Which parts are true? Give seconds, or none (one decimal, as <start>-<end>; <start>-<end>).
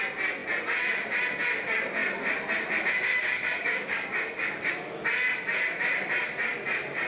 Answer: 0.0-3.1; 4.7-7.1